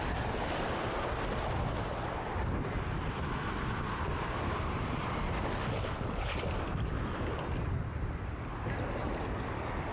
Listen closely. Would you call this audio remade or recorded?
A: recorded